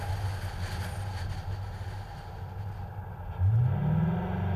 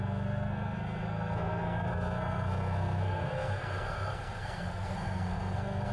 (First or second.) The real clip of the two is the first